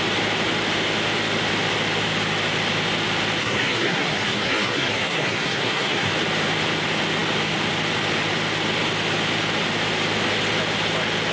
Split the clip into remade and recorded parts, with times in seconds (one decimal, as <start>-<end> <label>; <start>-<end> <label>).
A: 0.0-3.4 recorded; 3.4-6.1 remade; 6.1-11.3 recorded